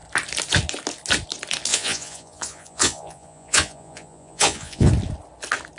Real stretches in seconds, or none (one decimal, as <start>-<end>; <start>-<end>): 0.0-1.7; 4.9-5.8